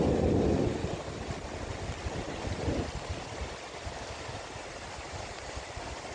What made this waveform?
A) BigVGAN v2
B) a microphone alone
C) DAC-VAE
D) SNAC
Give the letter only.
B